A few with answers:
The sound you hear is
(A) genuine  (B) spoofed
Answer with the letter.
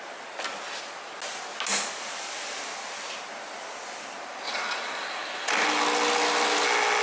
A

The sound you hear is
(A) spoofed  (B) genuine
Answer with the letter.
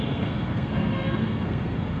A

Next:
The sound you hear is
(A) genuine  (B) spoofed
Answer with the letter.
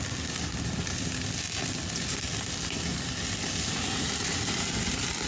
A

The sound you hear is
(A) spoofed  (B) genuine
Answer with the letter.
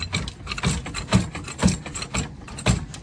B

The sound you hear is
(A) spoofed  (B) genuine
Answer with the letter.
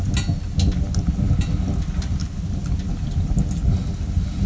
B